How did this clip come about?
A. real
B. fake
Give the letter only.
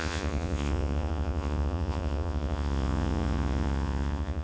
B